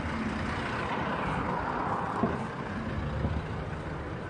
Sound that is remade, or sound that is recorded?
recorded